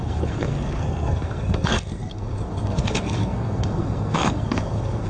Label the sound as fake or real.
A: fake